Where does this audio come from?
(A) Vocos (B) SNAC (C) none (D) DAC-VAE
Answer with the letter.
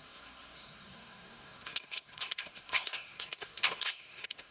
B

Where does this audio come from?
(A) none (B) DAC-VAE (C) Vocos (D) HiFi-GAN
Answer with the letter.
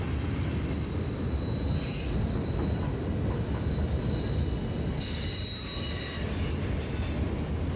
A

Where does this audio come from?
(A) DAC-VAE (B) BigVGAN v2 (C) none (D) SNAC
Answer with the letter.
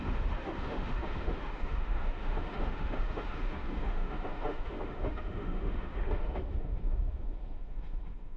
A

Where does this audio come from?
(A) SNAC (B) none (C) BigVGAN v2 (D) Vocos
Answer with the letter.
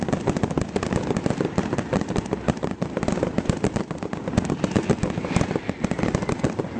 B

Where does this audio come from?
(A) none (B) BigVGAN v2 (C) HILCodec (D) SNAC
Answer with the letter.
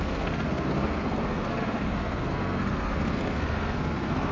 D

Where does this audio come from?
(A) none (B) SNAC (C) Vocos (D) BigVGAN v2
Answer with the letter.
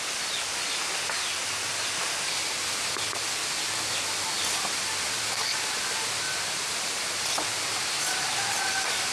A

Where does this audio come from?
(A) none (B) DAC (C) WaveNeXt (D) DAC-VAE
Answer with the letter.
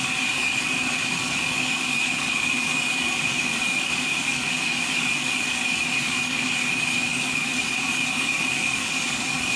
B